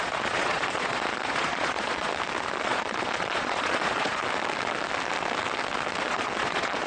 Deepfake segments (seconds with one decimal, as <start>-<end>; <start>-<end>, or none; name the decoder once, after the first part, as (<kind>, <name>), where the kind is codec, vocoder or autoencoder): 0.0-2.1 (vocoder, Vocos); 2.6-4.2; 6.0-6.9

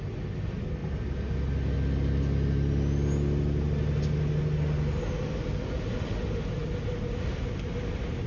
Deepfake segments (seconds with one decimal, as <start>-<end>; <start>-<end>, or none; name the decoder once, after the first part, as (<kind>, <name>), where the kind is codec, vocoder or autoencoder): none

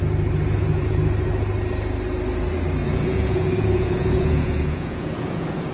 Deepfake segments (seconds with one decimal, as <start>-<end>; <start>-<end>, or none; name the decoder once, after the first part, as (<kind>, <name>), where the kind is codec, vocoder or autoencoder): 2.8-5.7 (vocoder, Vocos)